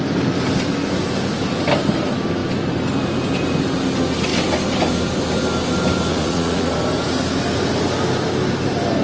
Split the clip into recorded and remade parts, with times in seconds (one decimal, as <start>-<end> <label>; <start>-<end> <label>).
0.0-6.1 recorded; 6.1-6.7 remade; 6.7-9.0 recorded